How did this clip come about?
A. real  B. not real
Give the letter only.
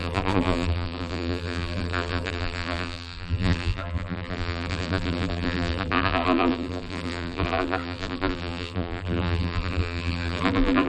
B